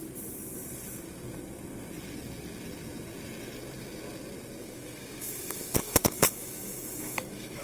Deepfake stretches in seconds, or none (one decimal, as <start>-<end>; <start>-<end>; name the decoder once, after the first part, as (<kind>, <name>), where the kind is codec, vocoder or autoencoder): 4.6-7.6 (autoencoder, DAC-VAE)